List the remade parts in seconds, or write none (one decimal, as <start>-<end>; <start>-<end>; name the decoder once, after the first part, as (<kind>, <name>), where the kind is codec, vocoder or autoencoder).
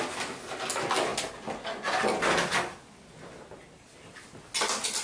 none